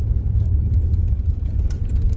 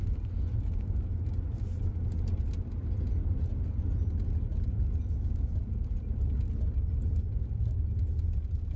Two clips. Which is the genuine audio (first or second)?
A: second